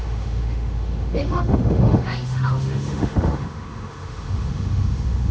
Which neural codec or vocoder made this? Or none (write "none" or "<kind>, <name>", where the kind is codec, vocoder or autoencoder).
autoencoder, DAC-VAE